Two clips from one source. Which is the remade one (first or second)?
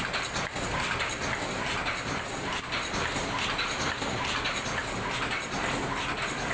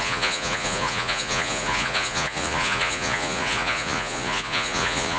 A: second